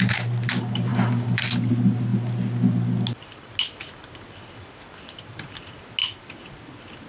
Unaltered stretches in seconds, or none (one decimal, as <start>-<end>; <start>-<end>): 0.0-7.1

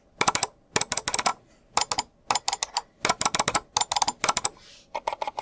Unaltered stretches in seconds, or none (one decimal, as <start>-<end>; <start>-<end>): 0.0-5.4

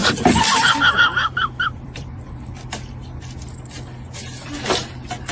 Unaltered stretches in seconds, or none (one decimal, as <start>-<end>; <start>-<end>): 3.2-5.3

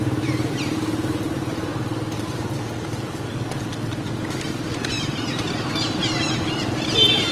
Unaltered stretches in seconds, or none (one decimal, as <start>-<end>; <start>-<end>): 1.7-5.8

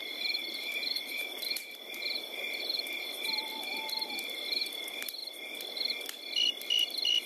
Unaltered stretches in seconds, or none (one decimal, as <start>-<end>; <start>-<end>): 3.1-7.3

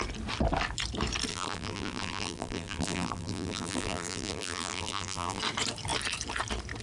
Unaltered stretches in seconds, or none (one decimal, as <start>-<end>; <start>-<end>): 0.0-1.3; 5.4-6.8

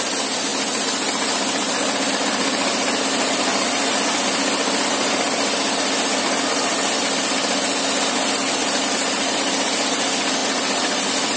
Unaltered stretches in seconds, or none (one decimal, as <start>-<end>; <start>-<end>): 0.0-11.4